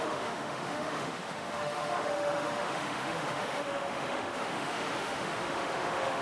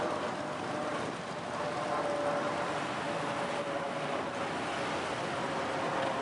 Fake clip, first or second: first